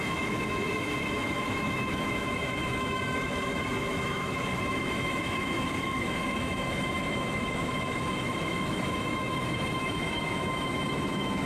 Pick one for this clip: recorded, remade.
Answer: remade